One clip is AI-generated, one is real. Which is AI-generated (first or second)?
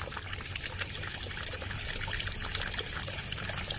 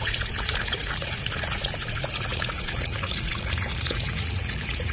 second